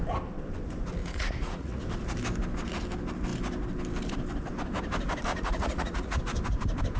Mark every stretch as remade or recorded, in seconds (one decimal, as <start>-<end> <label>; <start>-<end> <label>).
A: 0.0-1.0 recorded; 1.0-1.8 remade; 1.8-5.3 recorded; 5.3-6.2 remade; 6.2-7.0 recorded